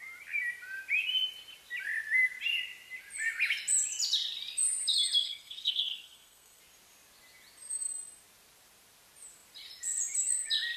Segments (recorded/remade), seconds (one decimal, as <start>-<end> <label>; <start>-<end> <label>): 0.0-5.2 recorded; 5.2-6.6 remade; 6.6-10.8 recorded